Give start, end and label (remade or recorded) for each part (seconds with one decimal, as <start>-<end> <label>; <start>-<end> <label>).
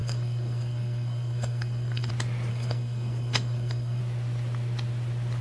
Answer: 0.0-2.1 remade; 2.1-2.5 recorded; 2.5-4.0 remade; 4.0-5.4 recorded